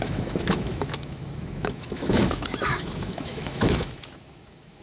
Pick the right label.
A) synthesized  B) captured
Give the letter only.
A